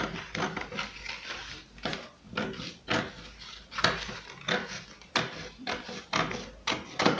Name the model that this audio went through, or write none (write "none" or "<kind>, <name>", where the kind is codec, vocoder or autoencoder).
none